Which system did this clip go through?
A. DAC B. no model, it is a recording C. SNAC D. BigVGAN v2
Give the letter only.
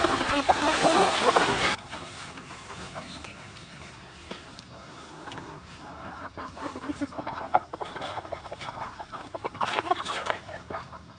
C